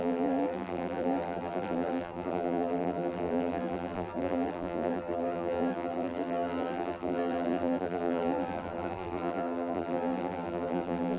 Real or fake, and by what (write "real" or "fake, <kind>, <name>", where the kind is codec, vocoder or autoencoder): fake, vocoder, BigVGAN v2